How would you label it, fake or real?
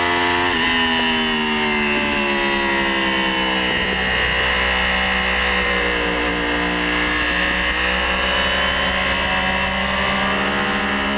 real